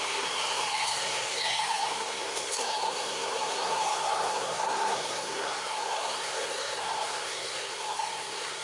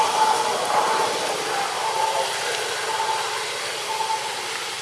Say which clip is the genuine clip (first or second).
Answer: second